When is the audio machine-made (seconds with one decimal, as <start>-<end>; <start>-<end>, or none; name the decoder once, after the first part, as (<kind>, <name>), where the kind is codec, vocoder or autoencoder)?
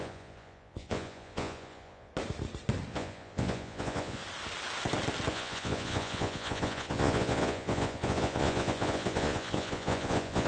0.0-2.1 (vocoder, Vocos); 2.9-4.2; 5.3-10.5